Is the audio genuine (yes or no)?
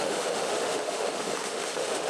no